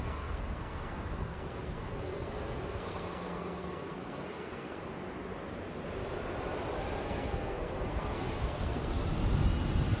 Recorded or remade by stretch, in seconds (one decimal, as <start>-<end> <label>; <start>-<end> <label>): 0.0-4.8 remade; 4.8-7.0 recorded; 7.0-9.0 remade; 9.0-10.0 recorded